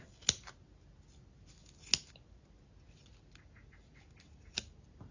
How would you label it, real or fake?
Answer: real